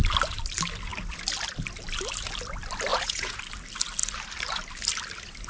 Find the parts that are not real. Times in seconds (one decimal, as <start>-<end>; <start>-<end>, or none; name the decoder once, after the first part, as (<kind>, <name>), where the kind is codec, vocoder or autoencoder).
2.9-3.4 (vocoder, Vocos)